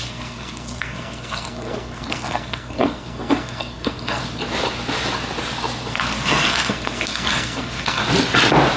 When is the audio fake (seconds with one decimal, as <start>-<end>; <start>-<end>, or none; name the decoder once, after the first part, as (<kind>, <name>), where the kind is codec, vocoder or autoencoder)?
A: 0.0-4.2 (codec, SNAC); 5.9-8.0